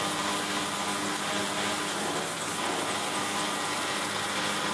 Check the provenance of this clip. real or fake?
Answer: real